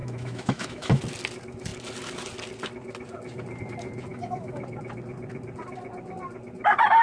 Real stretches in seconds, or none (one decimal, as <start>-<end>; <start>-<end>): 1.0-4.1; 4.6-7.0